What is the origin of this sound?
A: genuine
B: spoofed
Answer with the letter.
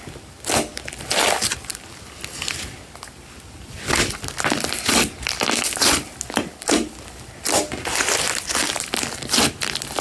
A